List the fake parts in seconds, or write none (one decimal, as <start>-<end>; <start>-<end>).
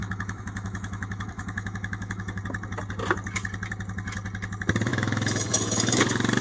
0.0-2.4; 4.9-6.0